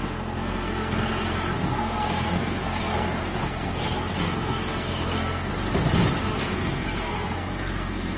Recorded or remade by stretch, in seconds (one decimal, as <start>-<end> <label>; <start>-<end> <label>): 0.0-5.5 remade; 5.5-6.4 recorded; 6.4-8.2 remade